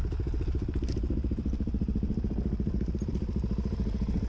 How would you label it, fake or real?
fake